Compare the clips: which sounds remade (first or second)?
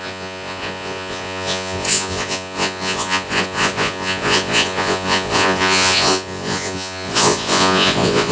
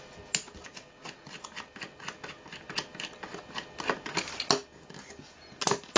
first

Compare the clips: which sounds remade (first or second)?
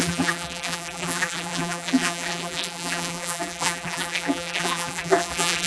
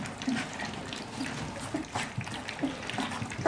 first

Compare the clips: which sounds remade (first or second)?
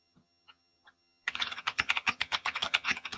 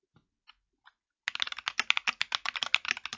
first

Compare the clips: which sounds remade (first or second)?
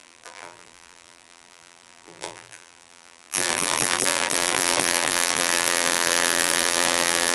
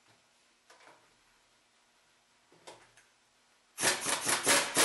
first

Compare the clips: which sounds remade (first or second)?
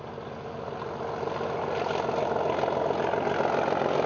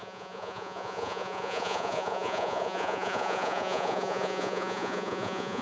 second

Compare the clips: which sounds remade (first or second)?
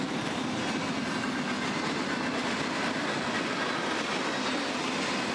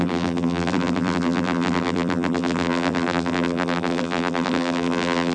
second